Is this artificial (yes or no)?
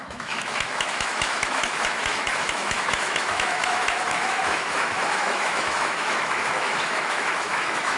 yes